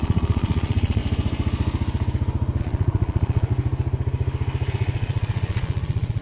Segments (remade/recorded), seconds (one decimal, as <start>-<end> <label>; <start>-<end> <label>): 0.0-1.0 remade; 1.0-2.6 recorded; 2.6-3.5 remade; 3.5-4.7 recorded; 4.7-6.2 remade

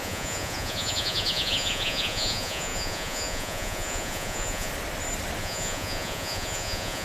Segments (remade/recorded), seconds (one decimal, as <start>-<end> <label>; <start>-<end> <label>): 0.0-4.7 remade; 4.7-5.4 recorded; 5.4-7.0 remade

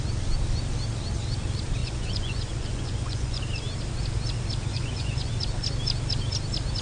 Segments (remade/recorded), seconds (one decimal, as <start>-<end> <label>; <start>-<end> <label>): 0.0-1.8 recorded; 1.8-3.4 remade; 3.4-4.7 recorded; 4.7-5.3 remade; 5.3-6.8 recorded